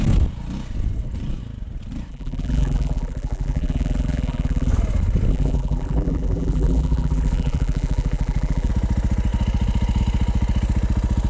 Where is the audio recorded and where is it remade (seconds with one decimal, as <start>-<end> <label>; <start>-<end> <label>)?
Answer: 0.0-2.1 recorded; 2.1-4.7 remade; 4.7-5.3 recorded; 5.3-8.7 remade; 8.7-11.3 recorded